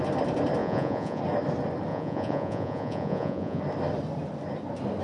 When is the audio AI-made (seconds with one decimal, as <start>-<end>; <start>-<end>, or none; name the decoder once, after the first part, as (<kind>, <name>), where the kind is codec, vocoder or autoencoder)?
0.6-1.2 (vocoder, Vocos); 1.9-3.6